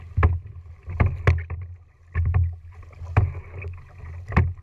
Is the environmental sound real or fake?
real